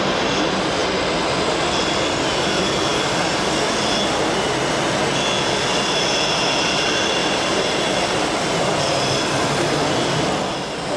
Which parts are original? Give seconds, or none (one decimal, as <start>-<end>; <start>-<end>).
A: 0.0-7.2; 8.0-11.0